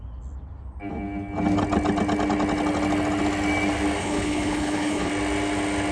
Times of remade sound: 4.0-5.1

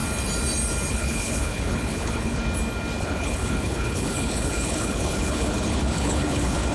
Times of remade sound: 0.9-2.4; 3.0-6.7